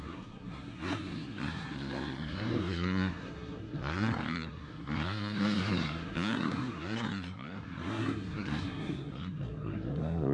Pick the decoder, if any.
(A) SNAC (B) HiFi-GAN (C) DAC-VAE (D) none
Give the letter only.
A